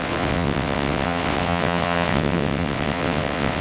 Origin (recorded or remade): remade